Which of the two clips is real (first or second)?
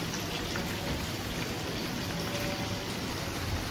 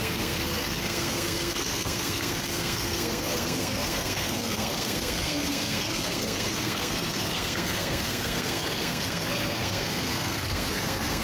first